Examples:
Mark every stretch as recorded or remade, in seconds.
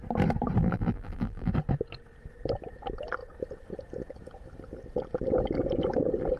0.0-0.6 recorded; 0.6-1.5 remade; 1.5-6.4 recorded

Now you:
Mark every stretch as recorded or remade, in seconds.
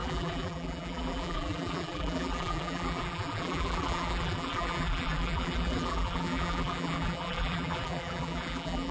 0.0-8.9 remade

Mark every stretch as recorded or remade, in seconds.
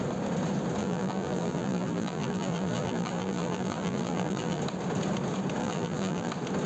0.0-0.8 recorded; 0.8-4.6 remade; 4.6-5.6 recorded; 5.6-6.3 remade; 6.3-6.7 recorded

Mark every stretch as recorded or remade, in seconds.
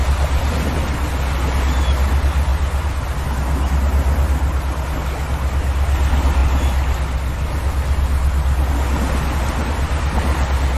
0.0-10.8 recorded